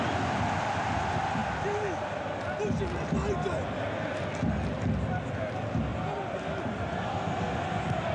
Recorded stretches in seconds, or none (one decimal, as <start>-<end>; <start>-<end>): 0.0-8.1